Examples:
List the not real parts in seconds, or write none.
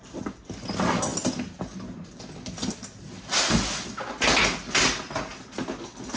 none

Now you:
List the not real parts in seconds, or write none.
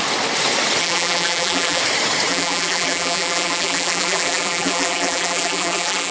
0.8-1.8 (vocoder, BigVGAN v2); 2.3-6.1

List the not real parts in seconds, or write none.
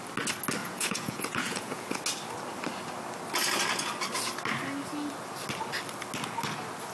0.6-2.0 (vocoder, Vocos)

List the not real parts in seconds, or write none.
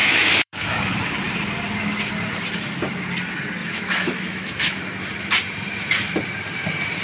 0.0-0.9 (autoencoder, DAC-VAE); 3.6-4.8